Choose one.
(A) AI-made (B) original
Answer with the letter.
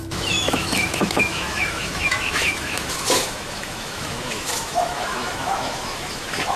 A